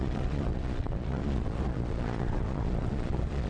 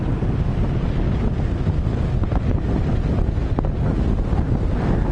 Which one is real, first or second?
second